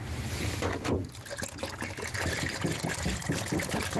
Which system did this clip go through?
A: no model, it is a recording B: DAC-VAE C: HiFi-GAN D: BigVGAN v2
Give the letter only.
A